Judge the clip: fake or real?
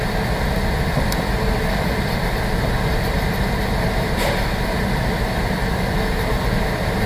fake